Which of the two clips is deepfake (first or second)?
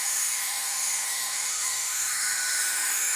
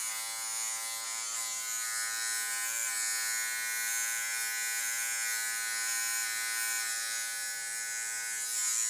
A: first